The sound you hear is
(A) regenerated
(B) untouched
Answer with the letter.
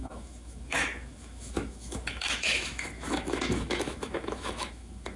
A